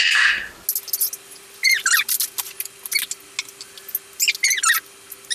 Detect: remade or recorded recorded